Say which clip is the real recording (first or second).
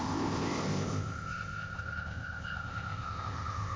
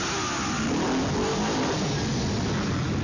second